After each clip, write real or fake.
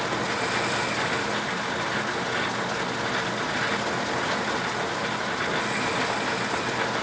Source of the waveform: real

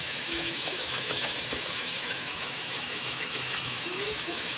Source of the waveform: fake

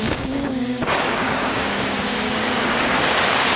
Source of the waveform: fake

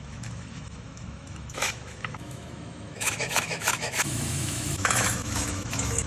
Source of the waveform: fake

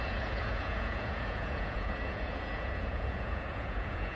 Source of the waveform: fake